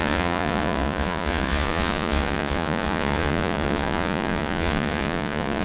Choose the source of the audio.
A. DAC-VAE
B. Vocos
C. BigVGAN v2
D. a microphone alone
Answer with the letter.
B